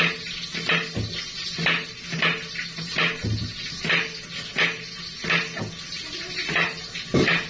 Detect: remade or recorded recorded